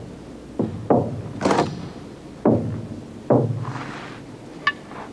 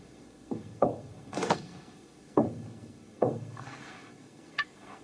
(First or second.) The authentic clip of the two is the first